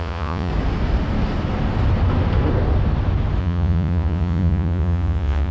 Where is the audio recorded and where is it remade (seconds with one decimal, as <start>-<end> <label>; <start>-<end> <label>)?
0.0-0.5 remade; 0.5-3.4 recorded; 3.4-5.5 remade